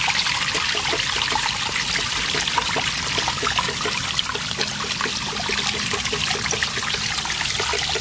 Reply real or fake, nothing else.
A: real